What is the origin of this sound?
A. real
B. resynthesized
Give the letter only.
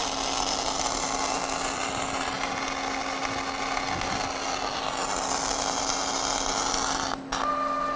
A